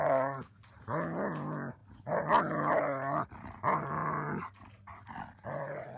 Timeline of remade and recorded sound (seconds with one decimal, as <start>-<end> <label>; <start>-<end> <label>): 0.0-6.0 recorded

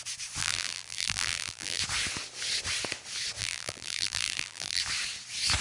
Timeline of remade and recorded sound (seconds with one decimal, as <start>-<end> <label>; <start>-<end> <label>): 0.0-0.4 recorded; 0.4-1.8 remade; 1.8-3.4 recorded; 3.4-4.8 remade; 4.8-5.6 recorded

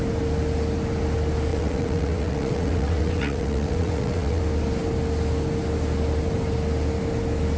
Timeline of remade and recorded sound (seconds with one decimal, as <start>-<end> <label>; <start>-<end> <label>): 0.0-1.5 recorded; 1.5-4.4 remade; 4.4-7.6 recorded

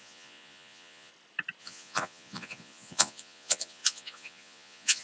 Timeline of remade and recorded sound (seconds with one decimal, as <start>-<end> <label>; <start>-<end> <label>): 0.0-1.1 remade; 1.1-1.6 recorded; 1.6-5.0 remade

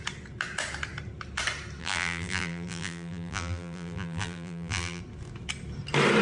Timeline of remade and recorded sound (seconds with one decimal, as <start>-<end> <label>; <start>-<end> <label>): 0.0-1.8 recorded; 1.8-5.0 remade; 5.0-6.2 recorded

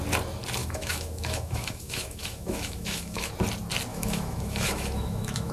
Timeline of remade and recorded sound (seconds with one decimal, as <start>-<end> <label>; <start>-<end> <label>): 0.0-0.6 recorded; 0.6-3.3 remade; 3.3-3.9 recorded; 3.9-5.5 remade

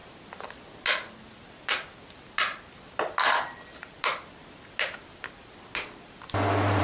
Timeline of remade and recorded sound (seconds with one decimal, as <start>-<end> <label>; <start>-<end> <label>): 0.0-6.8 recorded